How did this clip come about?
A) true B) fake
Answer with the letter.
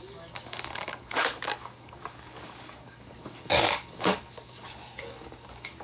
B